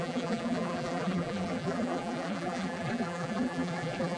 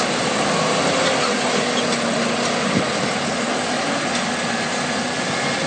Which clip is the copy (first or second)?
first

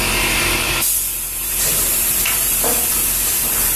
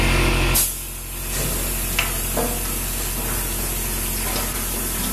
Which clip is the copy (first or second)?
first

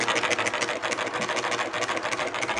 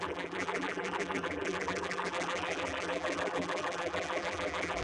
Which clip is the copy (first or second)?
second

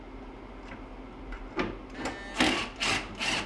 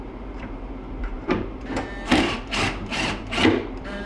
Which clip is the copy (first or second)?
second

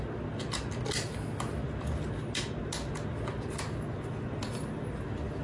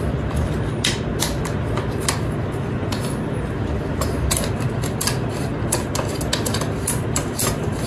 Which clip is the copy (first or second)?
second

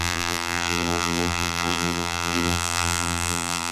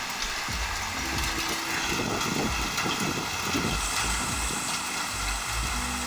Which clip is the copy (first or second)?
first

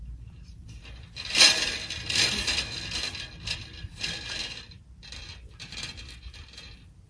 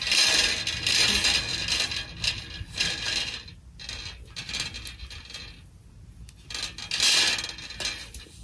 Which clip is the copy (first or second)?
first